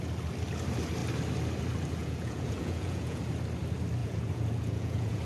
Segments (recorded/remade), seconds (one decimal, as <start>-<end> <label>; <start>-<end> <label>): 0.0-2.0 recorded; 2.0-3.2 remade; 3.2-4.0 recorded; 4.0-5.2 remade